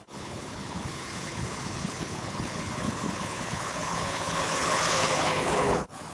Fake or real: fake